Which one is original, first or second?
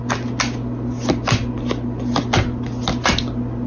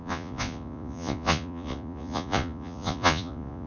first